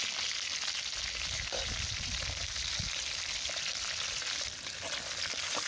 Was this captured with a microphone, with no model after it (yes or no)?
yes